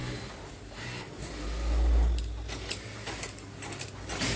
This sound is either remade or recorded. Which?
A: recorded